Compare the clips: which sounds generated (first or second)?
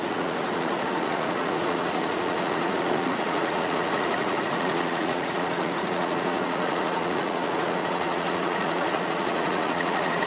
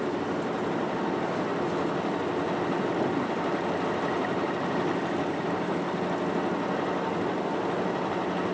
first